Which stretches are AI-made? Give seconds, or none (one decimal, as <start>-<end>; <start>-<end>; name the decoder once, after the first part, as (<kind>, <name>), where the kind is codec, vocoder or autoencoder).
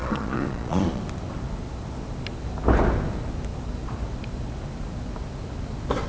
0.0-1.0 (vocoder, Vocos)